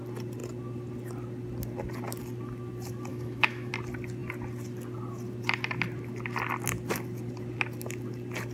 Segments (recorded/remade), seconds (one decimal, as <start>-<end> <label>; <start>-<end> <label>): 0.0-3.1 recorded; 3.1-3.7 remade; 3.7-8.5 recorded